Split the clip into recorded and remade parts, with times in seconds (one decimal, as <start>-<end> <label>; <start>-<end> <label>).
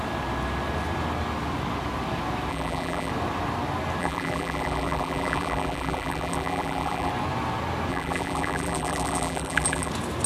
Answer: 0.0-2.5 recorded; 2.5-3.1 remade; 3.1-4.0 recorded; 4.0-7.1 remade; 7.1-7.9 recorded; 7.9-9.9 remade; 9.9-10.3 recorded